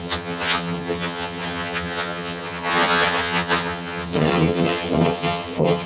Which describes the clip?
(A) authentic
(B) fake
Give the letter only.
B